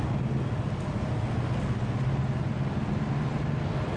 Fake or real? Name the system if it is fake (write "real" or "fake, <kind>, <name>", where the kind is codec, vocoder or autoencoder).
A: real